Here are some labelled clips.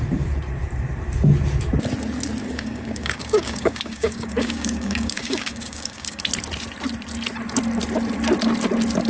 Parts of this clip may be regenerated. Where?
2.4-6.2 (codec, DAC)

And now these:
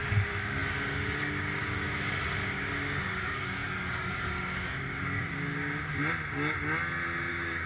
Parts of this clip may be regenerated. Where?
0.0-5.5 (codec, DAC); 7.3-7.7

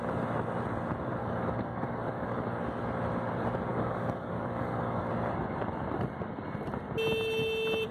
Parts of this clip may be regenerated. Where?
1.2-2.6 (codec, DAC); 3.7-5.1

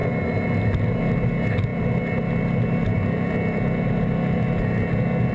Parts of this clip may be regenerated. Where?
none

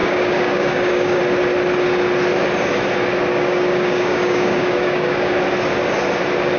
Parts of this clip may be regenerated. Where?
0.0-1.2 (codec, DAC); 3.3-5.4

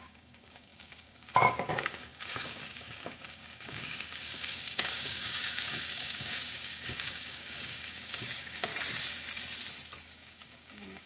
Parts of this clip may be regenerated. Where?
0.0-8.7 (codec, DAC); 10.1-11.1